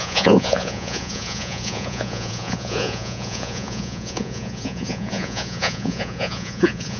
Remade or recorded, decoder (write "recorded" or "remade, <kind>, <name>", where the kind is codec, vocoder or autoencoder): remade, vocoder, Vocos